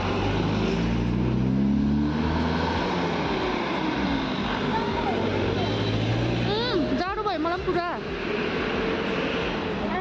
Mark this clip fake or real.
real